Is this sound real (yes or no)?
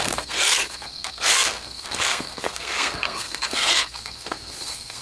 no